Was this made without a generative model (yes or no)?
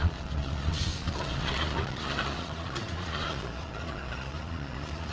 no